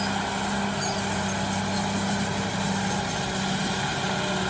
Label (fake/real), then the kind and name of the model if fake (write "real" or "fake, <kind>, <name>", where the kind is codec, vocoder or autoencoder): real